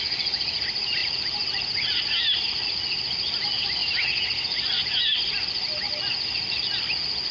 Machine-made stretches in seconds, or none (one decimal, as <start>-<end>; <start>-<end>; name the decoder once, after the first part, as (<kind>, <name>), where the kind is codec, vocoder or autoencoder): none